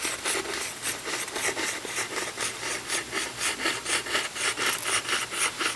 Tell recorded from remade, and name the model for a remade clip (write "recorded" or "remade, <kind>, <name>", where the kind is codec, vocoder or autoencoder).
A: recorded